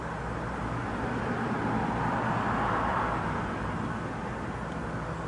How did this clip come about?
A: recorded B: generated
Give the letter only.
A